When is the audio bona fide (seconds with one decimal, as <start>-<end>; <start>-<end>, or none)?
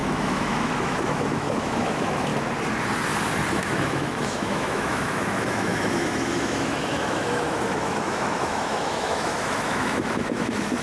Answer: 2.3-3.5